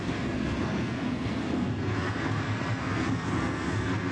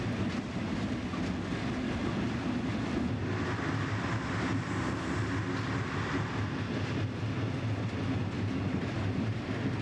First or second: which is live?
second